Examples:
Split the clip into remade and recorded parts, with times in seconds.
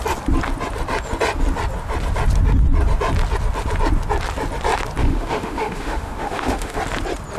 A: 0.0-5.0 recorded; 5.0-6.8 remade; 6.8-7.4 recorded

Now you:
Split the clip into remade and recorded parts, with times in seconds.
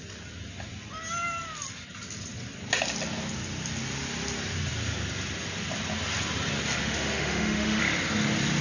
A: 0.0-6.8 recorded; 6.8-7.8 remade; 7.8-8.6 recorded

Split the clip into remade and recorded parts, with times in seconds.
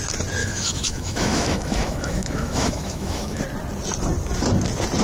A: 0.0-0.4 recorded; 0.4-3.4 remade; 3.4-5.0 recorded